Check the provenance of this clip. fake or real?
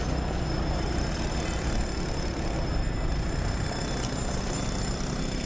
real